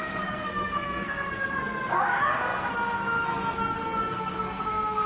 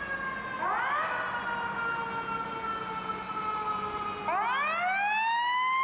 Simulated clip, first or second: first